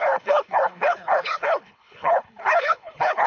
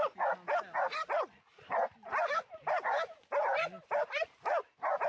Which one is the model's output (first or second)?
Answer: first